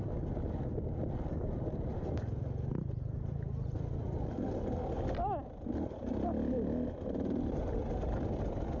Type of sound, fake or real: real